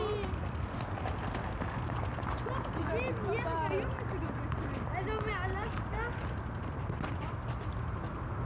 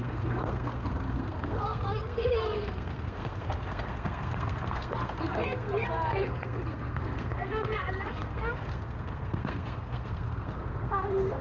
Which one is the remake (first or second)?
second